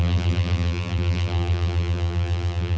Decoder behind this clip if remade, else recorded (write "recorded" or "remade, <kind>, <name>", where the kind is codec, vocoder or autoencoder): remade, vocoder, BigVGAN v2